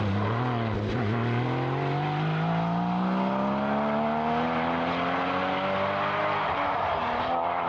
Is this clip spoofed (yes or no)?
no